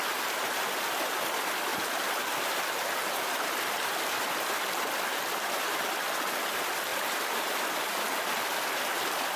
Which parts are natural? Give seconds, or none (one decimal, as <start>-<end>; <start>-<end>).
0.0-1.7; 5.3-6.9; 8.4-9.4